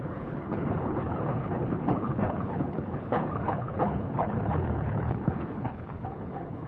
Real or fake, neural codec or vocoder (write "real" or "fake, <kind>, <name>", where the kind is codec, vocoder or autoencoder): fake, codec, HILCodec